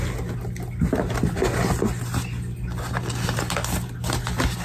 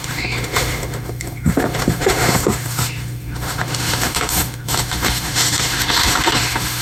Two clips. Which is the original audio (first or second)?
first